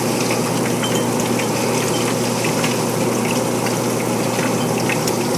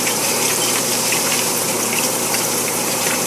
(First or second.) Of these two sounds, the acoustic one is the first